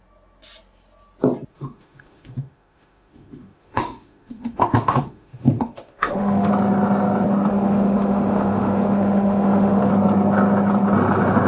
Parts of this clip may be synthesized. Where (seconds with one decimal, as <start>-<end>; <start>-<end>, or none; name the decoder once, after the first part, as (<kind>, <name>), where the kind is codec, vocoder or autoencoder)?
1.5-6.5 (autoencoder, DAC-VAE); 7.5-9.9